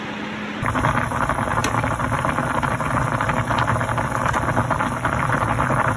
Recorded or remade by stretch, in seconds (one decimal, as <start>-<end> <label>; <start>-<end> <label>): 0.0-6.0 recorded